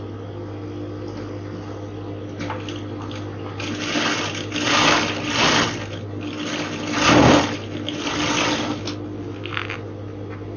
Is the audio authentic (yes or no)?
yes